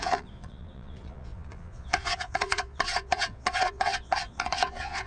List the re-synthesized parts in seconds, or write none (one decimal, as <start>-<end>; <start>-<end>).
0.0-5.1